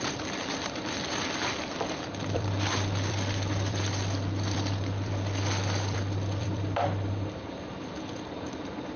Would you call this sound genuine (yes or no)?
no